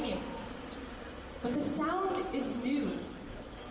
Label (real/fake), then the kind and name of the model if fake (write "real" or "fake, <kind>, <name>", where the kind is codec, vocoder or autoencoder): real